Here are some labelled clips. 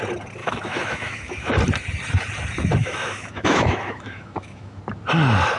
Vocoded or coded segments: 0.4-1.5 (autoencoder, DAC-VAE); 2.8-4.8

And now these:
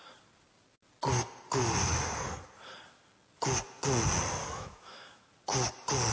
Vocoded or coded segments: 4.4-5.3 (autoencoder, DAC-VAE)

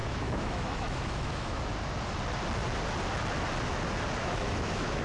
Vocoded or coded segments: 0.0-1.6 (autoencoder, DAC-VAE); 4.2-5.0

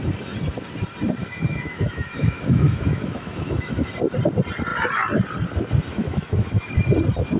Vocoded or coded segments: 1.2-3.9 (autoencoder, DAC-VAE); 5.9-6.7

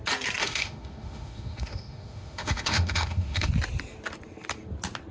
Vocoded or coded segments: 0.4-3.5 (autoencoder, DAC-VAE)